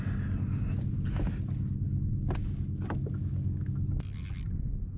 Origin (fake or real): real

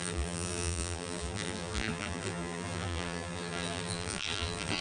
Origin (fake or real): fake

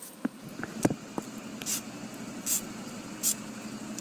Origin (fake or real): real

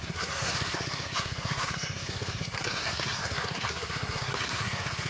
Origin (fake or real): fake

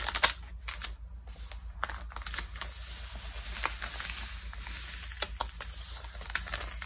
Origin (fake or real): real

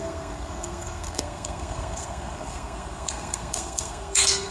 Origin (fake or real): fake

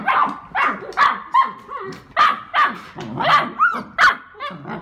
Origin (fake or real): real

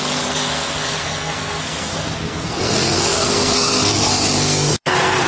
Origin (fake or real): fake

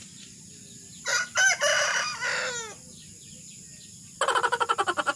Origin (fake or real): real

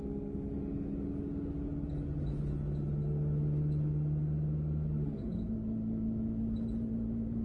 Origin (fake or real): real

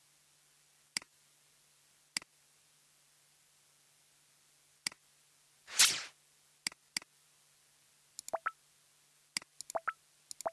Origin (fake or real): real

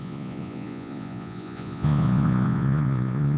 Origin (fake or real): fake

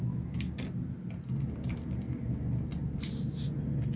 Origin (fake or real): real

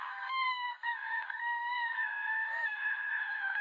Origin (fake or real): fake